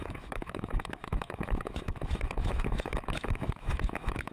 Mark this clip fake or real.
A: fake